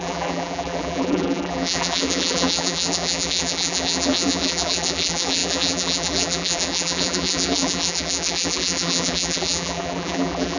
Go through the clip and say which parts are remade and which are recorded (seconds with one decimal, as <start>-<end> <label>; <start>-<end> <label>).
0.0-10.6 remade